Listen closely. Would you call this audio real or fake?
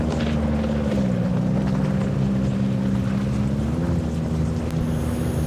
real